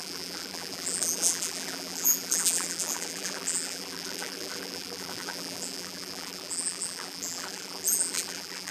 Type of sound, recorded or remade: remade